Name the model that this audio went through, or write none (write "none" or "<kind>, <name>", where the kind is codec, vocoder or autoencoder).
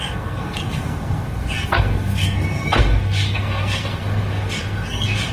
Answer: codec, SNAC